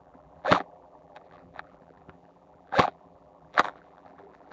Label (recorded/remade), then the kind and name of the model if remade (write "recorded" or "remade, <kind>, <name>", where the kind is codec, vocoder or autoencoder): remade, vocoder, BigVGAN v2